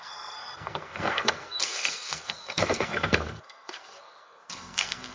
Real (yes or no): no